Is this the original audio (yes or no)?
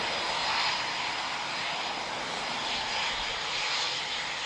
yes